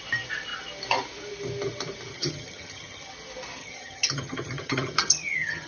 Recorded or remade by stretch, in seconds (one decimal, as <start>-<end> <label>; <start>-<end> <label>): 0.0-2.1 recorded; 2.1-3.1 remade; 3.1-3.6 recorded; 3.6-5.7 remade